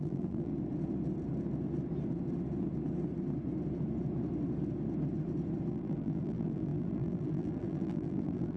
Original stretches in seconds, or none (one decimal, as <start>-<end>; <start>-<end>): 0.5-5.7